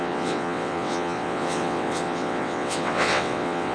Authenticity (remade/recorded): remade